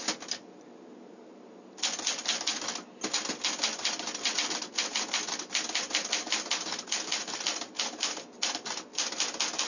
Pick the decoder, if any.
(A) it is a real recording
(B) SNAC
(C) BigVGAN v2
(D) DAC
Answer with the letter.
A